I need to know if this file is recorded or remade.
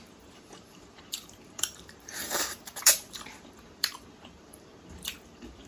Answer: remade